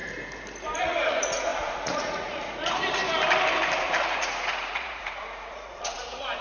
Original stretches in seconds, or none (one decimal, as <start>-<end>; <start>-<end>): 0.0-0.8; 3.0-3.8